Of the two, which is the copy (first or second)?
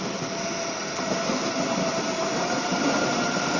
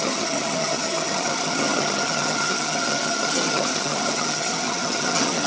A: second